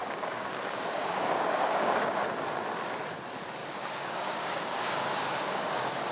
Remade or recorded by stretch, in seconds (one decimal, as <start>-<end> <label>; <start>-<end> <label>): 0.0-2.2 remade; 2.2-3.6 recorded; 3.6-6.1 remade